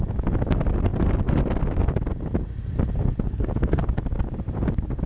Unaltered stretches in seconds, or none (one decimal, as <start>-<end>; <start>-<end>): 0.0-3.3; 3.8-5.1